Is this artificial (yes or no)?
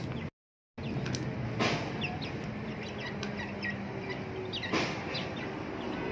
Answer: no